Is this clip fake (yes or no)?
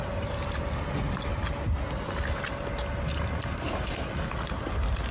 no